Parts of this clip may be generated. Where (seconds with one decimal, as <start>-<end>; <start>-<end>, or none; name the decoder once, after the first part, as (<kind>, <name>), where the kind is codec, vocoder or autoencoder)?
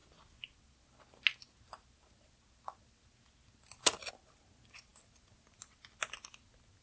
none